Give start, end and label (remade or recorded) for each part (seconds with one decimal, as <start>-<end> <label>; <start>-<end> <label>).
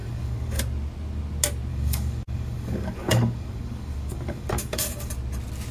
0.0-0.6 remade; 0.6-1.7 recorded; 1.7-5.1 remade; 5.1-5.7 recorded